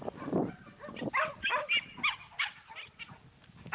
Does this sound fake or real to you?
real